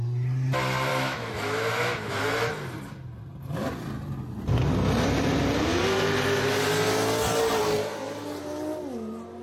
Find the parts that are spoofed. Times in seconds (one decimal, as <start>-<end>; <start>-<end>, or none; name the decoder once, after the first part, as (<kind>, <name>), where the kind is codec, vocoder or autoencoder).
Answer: 0.9-2.2 (autoencoder, DAC-VAE)